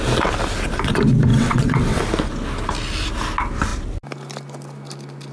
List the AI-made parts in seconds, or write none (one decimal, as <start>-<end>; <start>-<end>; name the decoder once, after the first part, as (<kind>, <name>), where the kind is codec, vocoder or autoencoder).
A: 1.3-2.0 (vocoder, WaveNeXt)